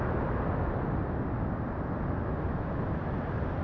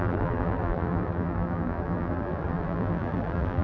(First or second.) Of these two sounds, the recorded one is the first